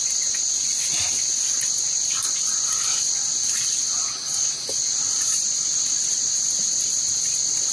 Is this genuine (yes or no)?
yes